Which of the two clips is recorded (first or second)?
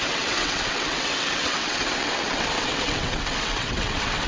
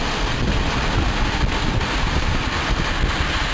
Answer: second